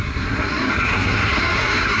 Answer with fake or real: fake